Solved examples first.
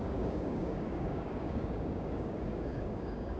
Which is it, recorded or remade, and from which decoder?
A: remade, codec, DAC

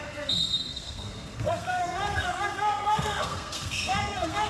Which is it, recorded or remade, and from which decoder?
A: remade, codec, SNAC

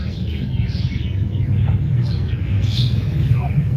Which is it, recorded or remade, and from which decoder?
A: remade, codec, SNAC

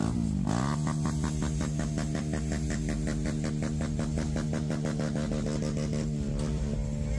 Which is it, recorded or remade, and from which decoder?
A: recorded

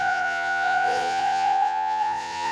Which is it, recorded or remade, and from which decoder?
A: remade, vocoder, Vocos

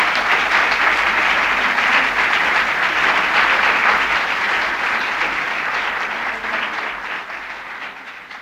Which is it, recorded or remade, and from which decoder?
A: recorded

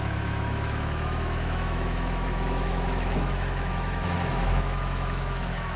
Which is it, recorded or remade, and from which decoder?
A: remade, autoencoder, DAC-VAE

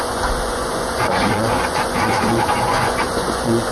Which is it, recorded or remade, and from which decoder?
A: remade, vocoder, Vocos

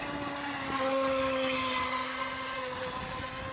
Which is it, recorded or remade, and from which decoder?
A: recorded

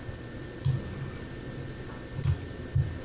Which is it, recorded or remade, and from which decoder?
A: recorded